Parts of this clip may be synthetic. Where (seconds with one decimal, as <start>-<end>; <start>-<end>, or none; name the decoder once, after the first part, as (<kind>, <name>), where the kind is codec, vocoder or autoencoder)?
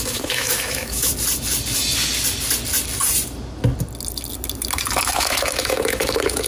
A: 0.0-1.1 (autoencoder, DAC-VAE); 5.0-6.5